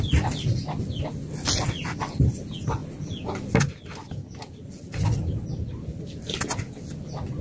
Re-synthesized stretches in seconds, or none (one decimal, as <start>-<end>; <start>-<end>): none